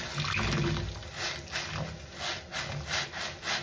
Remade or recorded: recorded